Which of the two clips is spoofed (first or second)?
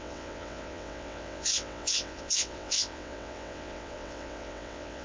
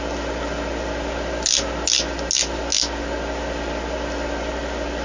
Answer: first